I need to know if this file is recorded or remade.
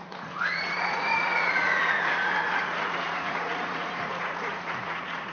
remade